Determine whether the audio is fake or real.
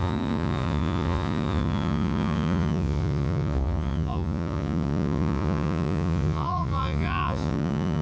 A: fake